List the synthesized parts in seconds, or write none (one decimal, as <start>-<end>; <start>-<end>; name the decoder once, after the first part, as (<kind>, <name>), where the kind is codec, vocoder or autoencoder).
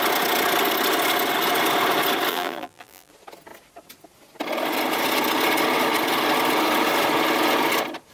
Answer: 2.3-3.1 (vocoder, BigVGAN v2)